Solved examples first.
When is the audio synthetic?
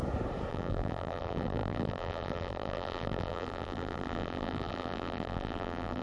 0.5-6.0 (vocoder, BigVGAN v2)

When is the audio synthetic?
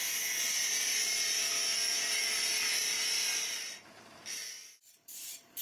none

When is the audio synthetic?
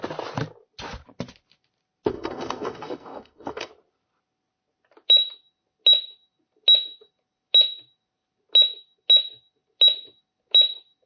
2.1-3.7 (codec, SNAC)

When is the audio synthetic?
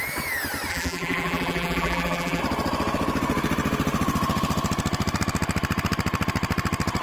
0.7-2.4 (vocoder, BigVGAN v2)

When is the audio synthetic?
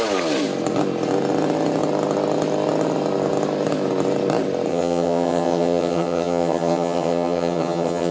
4.7-8.1 (vocoder, HiFi-GAN)